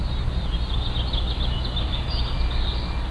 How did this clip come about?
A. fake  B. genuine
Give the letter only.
B